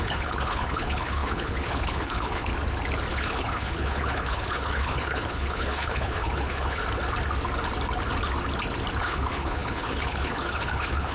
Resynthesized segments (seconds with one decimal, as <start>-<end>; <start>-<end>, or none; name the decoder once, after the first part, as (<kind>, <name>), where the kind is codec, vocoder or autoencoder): 0.0-2.5 (codec, HILCodec); 3.1-6.8; 9.0-11.1